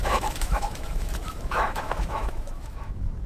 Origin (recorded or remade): remade